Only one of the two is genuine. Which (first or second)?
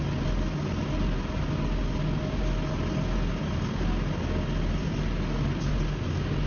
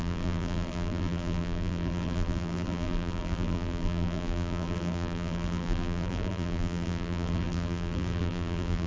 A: first